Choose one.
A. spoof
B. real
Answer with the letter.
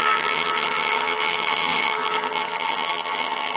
A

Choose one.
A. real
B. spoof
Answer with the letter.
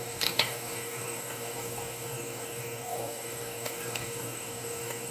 B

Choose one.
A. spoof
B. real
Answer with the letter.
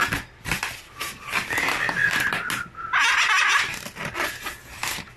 B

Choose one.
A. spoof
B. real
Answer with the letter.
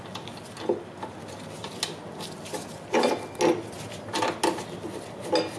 B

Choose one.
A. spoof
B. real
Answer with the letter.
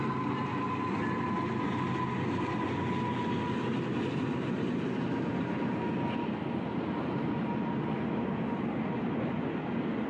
B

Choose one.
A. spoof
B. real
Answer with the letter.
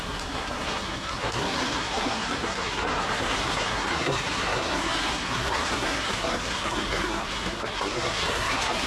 A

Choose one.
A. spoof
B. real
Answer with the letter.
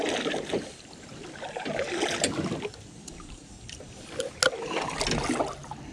B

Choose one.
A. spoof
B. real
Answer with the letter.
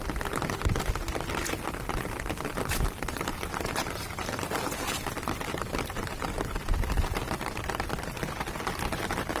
B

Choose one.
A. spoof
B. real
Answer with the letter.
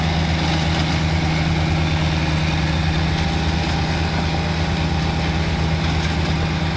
B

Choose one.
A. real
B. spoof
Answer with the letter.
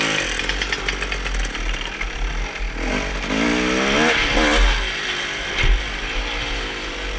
A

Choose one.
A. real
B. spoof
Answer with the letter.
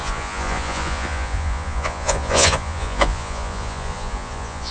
B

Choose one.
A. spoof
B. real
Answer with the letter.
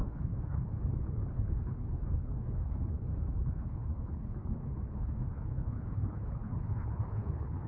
A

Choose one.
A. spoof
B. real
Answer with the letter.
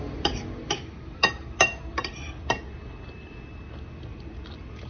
A